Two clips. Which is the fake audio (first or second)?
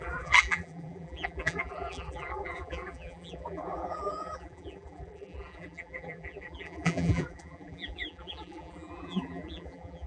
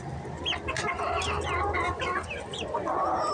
first